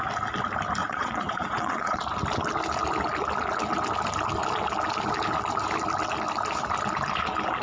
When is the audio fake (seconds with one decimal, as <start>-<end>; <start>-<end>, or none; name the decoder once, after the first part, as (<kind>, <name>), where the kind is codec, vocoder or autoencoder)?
0.8-2.0 (vocoder, Vocos)